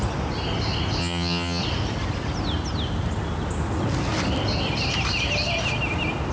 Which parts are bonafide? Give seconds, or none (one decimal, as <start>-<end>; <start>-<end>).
0.0-1.0; 1.6-6.3